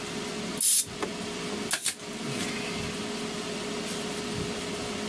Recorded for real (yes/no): yes